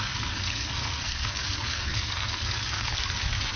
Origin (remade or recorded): remade